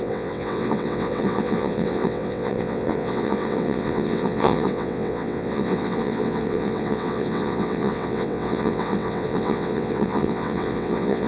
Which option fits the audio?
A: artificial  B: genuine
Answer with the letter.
A